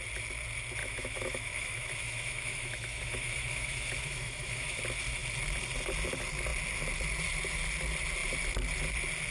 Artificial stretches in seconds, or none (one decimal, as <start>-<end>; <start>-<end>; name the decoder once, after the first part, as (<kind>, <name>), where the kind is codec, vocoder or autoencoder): 0.8-4.8 (autoencoder, DAC-VAE)